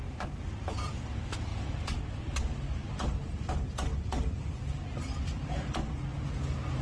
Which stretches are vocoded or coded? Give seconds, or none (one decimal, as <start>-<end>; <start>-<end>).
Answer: none